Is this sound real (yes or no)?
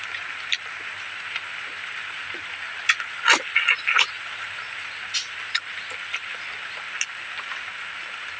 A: yes